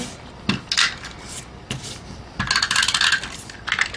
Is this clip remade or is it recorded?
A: recorded